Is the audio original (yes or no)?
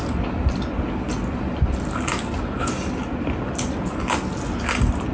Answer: yes